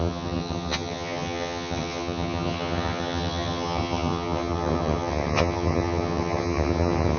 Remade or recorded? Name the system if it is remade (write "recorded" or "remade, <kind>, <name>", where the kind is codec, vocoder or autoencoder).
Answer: remade, vocoder, HiFi-GAN